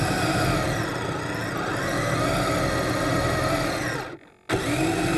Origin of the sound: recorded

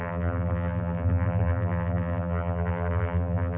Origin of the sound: remade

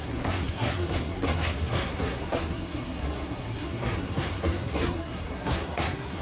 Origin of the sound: remade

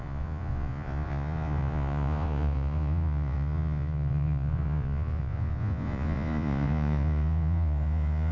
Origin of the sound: remade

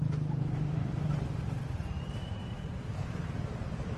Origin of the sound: remade